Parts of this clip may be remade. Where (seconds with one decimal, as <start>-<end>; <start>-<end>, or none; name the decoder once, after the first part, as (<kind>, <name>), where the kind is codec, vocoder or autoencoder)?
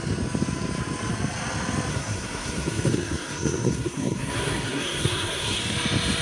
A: 1.9-5.6 (codec, SNAC)